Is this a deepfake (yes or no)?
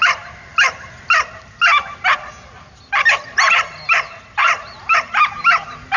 no